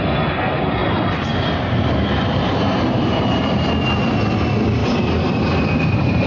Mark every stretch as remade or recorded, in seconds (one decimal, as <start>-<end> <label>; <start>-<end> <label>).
0.0-0.8 recorded; 0.8-3.7 remade; 3.7-4.8 recorded; 4.8-6.3 remade